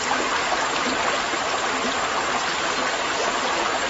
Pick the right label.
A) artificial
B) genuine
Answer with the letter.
B